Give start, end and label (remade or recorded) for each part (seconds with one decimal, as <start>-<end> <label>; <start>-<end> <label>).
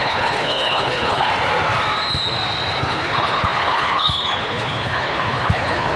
0.0-1.3 remade; 1.3-2.8 recorded; 2.8-6.0 remade